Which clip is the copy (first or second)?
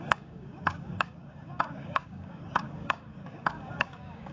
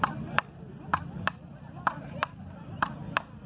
first